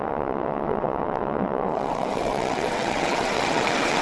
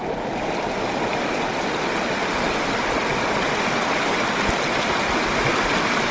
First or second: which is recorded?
second